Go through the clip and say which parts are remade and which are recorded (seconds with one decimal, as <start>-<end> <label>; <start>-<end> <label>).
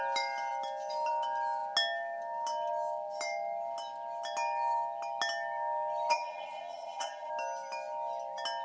0.0-6.1 recorded; 6.1-7.3 remade; 7.3-8.6 recorded